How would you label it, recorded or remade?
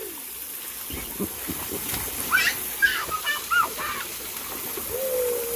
recorded